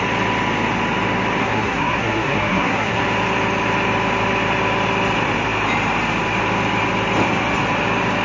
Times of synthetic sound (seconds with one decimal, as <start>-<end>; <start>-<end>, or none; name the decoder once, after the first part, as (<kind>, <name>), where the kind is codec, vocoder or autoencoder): 1.4-3.0 (codec, SNAC)